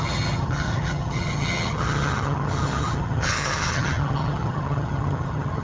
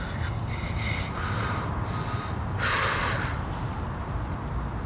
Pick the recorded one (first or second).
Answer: second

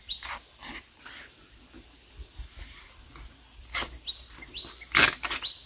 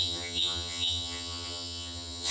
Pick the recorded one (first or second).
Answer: first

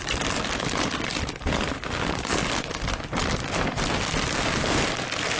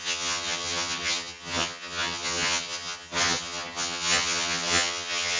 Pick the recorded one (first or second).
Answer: first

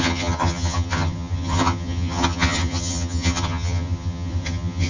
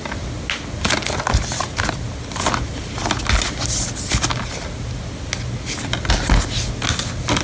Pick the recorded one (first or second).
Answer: second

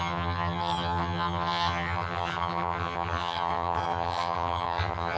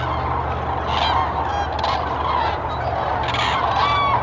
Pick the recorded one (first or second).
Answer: second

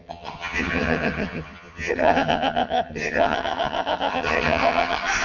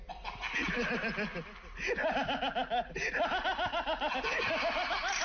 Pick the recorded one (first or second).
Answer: second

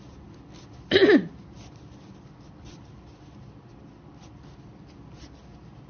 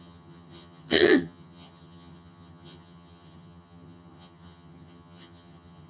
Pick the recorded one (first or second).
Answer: first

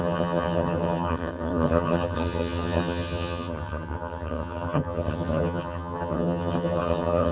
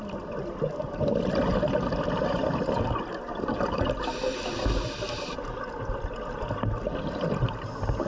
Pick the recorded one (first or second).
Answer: second